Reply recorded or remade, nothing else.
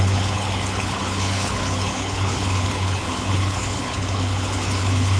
remade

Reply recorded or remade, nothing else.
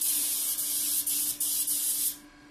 recorded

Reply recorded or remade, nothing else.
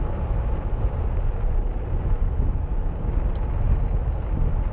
recorded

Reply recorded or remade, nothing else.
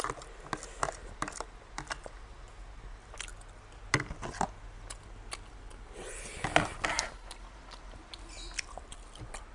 recorded